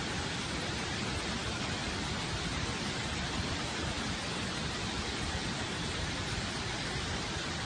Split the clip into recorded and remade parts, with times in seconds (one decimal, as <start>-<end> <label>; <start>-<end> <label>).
0.0-7.7 recorded